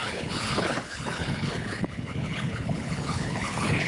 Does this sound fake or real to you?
fake